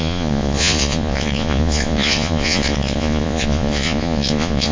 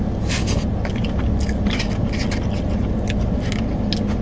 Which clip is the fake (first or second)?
first